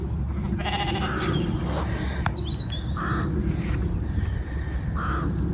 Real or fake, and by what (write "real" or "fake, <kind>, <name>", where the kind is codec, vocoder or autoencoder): real